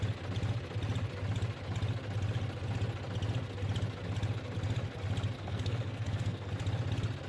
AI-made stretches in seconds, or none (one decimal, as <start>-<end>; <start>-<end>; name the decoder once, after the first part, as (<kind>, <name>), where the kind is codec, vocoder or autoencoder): 5.4-6.5 (codec, SNAC)